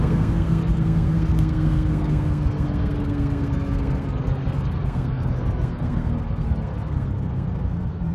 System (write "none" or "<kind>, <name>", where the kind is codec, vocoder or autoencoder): codec, SNAC